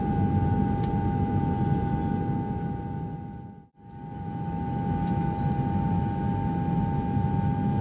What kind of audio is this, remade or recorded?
recorded